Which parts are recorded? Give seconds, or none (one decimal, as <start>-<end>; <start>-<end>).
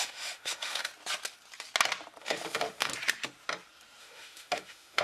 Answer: 0.9-2.2; 2.9-4.0